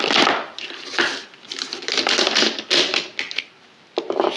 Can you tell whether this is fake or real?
real